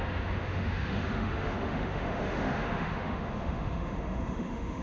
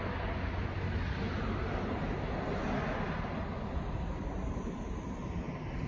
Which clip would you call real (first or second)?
second